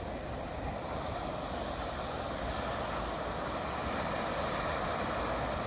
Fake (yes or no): no